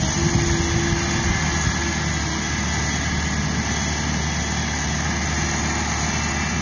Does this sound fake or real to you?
real